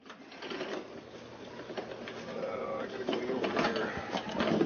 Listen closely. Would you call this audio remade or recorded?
recorded